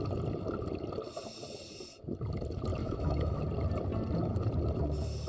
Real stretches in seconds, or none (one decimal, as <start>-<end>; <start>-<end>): 0.0-2.8; 3.4-5.3